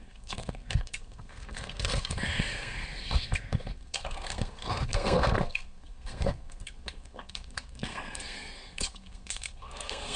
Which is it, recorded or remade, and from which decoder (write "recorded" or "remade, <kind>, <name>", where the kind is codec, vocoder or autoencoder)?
remade, codec, SNAC